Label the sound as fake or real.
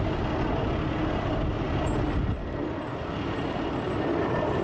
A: real